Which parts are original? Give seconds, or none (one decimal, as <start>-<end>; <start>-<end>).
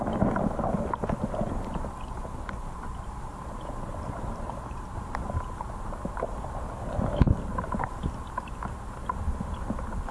0.0-2.6; 6.3-10.1